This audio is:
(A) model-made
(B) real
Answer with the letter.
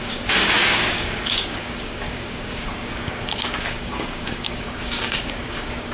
A